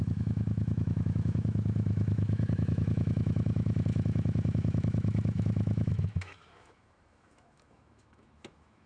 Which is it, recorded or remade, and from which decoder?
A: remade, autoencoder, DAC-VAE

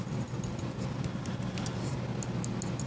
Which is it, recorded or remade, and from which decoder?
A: recorded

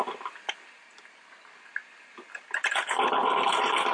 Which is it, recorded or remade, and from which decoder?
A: recorded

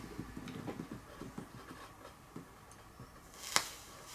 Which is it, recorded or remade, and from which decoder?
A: recorded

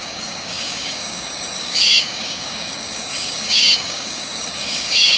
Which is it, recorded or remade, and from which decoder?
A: remade, codec, DAC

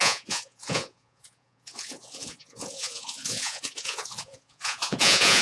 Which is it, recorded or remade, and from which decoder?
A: remade, vocoder, Vocos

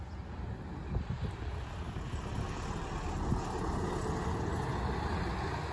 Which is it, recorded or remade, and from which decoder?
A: recorded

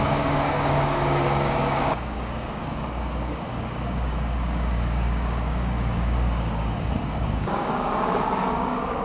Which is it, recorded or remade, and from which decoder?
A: remade, codec, DAC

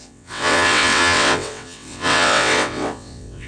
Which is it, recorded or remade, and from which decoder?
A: remade, vocoder, WaveNeXt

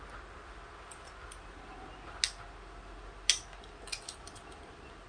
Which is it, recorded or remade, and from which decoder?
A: recorded